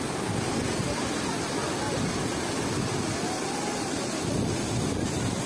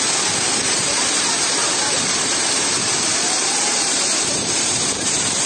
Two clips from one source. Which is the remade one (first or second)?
second